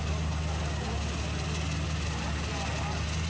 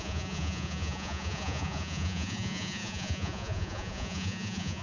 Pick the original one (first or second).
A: first